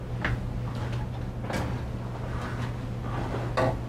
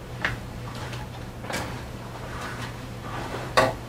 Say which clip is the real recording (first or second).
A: first